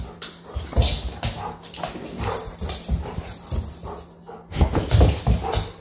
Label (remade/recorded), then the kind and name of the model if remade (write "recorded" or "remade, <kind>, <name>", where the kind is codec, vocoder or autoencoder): recorded